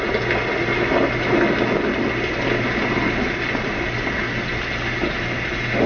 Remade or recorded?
recorded